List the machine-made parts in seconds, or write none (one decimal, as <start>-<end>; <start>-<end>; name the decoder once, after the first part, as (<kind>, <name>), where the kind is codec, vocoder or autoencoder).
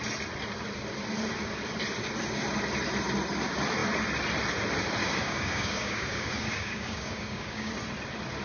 5.0-7.7 (codec, DAC)